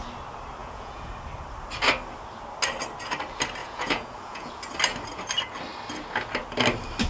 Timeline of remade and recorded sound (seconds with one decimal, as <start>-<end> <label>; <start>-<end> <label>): 0.0-0.6 recorded; 0.6-1.1 remade; 1.1-3.6 recorded; 3.6-4.5 remade; 4.5-7.1 recorded